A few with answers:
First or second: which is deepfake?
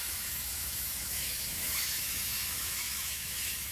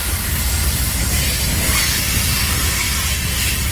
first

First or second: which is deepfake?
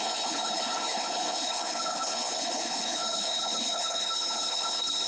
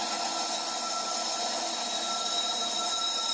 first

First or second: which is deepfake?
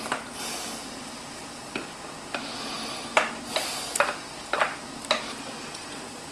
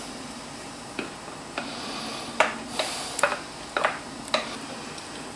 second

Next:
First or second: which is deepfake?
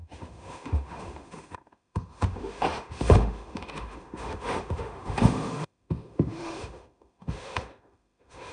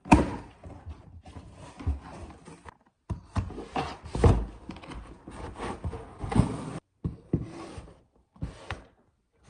first